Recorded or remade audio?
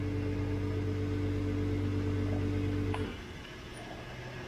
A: recorded